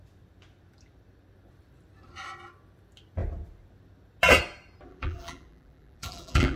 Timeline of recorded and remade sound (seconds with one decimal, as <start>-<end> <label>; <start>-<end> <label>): 0.0-4.9 recorded; 4.9-6.6 remade